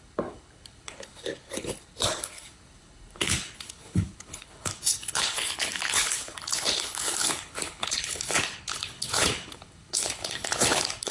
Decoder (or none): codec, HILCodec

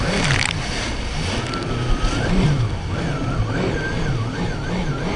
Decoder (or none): none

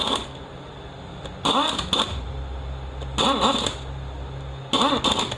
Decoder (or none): none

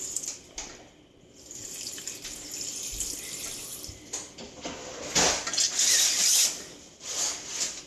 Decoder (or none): none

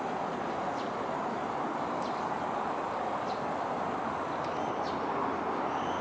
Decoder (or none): none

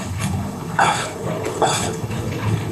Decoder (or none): codec, HILCodec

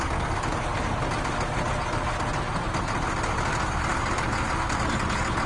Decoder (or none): none